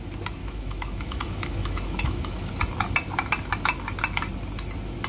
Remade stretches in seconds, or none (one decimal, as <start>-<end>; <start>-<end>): 0.4-2.5